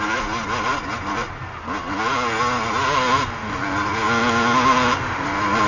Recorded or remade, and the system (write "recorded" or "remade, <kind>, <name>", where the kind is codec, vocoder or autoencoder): recorded